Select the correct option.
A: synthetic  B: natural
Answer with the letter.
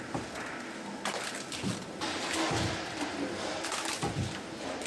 B